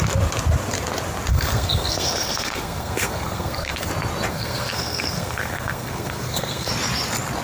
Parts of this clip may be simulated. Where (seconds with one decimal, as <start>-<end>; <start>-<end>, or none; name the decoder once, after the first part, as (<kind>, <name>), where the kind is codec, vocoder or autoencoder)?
1.3-3.9 (codec, SNAC); 4.3-6.7